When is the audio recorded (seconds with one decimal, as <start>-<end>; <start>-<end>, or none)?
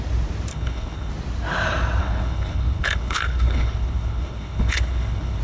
0.0-0.5; 1.1-2.0